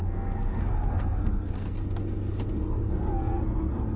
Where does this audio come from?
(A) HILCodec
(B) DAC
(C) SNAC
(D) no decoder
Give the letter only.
C